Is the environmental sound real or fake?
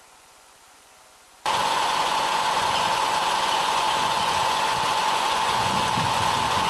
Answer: fake